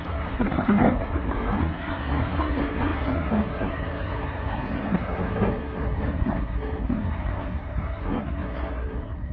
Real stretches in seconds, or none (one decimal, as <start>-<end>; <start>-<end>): none